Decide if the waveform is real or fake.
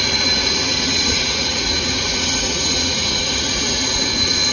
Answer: fake